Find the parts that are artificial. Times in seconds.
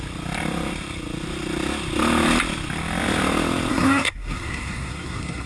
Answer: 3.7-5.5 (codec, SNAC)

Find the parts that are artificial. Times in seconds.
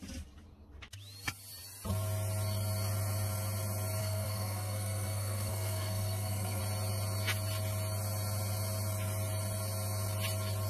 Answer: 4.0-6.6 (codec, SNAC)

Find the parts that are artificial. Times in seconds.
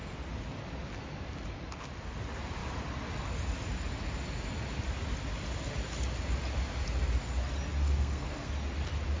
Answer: 7.8-8.5 (codec, SNAC)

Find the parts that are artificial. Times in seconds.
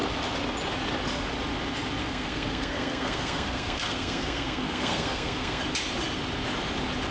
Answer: 2.0-5.6 (codec, SNAC)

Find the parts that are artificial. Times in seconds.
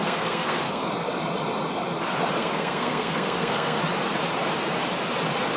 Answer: 0.0-0.9 (codec, SNAC); 2.4-3.8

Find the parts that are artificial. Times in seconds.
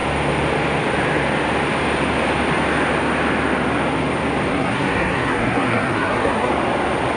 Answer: 4.5-6.5 (codec, SNAC)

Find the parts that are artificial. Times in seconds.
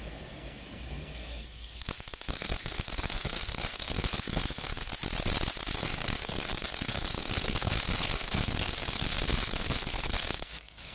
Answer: 0.0-4.9 (codec, SNAC); 5.8-10.9